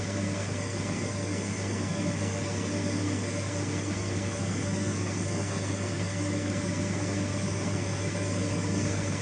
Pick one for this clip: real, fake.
fake